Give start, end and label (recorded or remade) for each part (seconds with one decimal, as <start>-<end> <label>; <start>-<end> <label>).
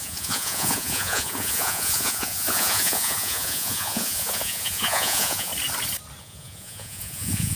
0.0-5.5 remade; 5.5-6.2 recorded; 6.2-7.6 remade